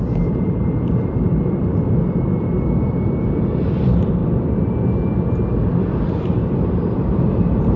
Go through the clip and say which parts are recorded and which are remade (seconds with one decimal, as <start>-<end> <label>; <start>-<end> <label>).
0.0-4.2 remade; 4.2-5.7 recorded; 5.7-7.8 remade